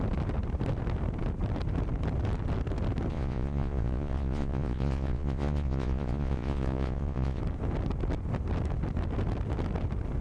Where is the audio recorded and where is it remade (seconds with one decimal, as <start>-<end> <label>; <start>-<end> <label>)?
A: 0.0-3.1 recorded; 3.1-7.4 remade; 7.4-10.2 recorded